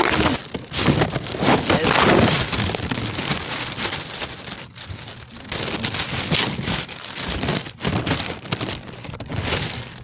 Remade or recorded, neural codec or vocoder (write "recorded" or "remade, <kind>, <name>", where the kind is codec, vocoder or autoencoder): recorded